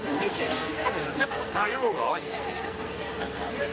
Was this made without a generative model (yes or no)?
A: no